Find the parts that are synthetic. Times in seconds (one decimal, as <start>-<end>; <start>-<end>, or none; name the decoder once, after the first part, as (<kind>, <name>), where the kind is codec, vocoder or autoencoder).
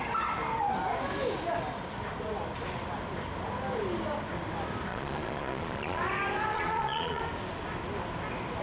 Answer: 4.9-6.0 (vocoder, Vocos); 6.5-7.2